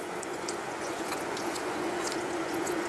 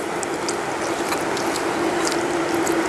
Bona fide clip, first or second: second